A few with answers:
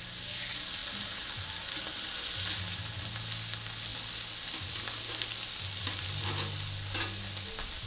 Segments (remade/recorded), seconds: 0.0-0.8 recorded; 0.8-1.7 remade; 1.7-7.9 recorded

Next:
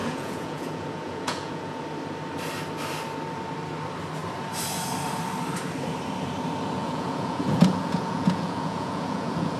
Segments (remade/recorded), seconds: 0.0-1.8 remade; 1.8-6.8 recorded; 6.8-9.6 remade